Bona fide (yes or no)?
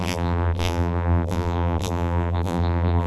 no